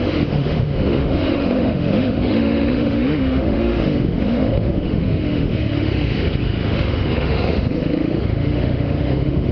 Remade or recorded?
remade